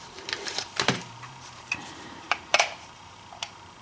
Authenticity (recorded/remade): remade